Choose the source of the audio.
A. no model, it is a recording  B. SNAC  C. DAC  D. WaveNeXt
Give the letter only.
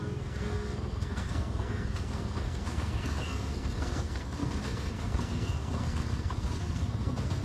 B